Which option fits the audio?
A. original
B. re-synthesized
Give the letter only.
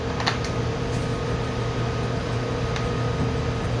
A